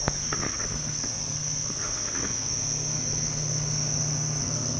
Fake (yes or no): yes